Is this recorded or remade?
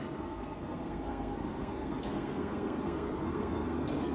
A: remade